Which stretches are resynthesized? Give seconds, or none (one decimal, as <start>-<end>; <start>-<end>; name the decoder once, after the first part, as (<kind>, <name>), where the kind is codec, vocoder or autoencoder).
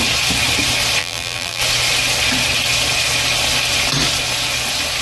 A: 1.0-1.6 (vocoder, BigVGAN v2)